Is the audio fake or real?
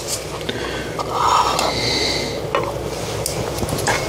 real